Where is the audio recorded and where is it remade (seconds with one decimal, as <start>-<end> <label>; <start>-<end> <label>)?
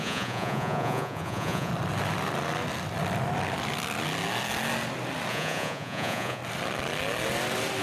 0.0-1.7 remade; 1.7-5.3 recorded; 5.3-6.4 remade; 6.4-7.8 recorded